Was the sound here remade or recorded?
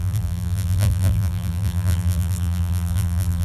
remade